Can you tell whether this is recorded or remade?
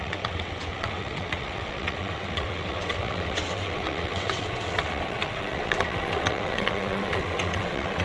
remade